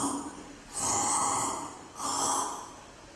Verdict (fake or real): real